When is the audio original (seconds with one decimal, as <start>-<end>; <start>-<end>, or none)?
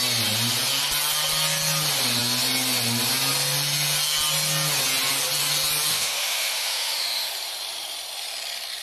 0.0-5.9; 7.3-8.8